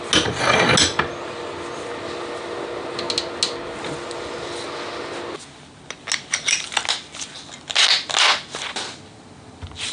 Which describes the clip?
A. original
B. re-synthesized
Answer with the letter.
A